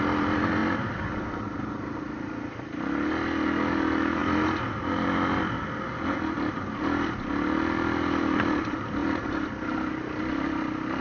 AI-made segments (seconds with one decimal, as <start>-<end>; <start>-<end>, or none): 0.6-2.5; 4.2-4.8; 9.0-9.9